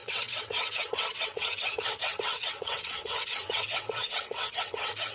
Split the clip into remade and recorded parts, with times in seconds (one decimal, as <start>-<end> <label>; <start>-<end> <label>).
0.0-5.1 remade